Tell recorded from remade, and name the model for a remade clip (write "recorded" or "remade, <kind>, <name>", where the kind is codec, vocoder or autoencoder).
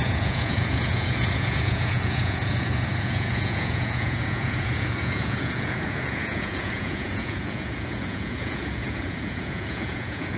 remade, vocoder, Vocos